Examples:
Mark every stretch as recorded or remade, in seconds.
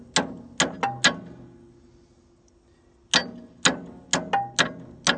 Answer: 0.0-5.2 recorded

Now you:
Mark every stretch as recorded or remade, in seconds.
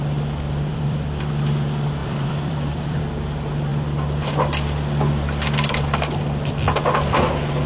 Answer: 0.0-0.7 recorded; 0.7-1.3 remade; 1.3-2.0 recorded; 2.0-3.0 remade; 3.0-7.7 recorded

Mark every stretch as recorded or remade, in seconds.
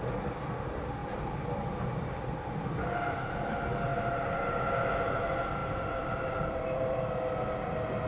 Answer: 0.0-1.0 recorded; 1.0-1.8 remade; 1.8-5.6 recorded; 5.6-7.0 remade; 7.0-8.1 recorded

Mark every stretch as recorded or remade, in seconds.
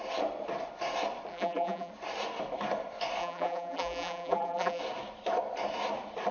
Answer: 0.0-1.3 recorded; 1.3-1.9 remade; 1.9-3.2 recorded; 3.2-4.8 remade; 4.8-6.3 recorded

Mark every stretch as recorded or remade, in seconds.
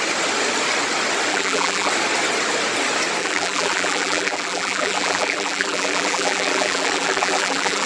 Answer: 0.0-1.3 recorded; 1.3-1.9 remade; 1.9-3.2 recorded; 3.2-7.9 remade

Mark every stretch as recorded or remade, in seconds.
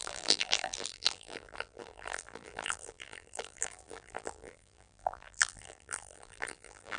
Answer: 0.0-7.0 remade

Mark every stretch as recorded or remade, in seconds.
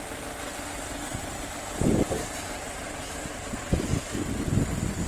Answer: 0.0-1.1 recorded; 1.1-4.2 remade; 4.2-5.1 recorded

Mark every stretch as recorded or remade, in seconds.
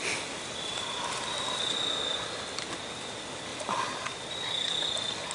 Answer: 0.0-3.5 recorded; 3.5-4.2 remade; 4.2-5.3 recorded